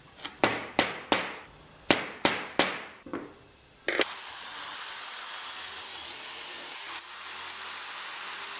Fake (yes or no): no